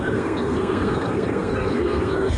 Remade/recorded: remade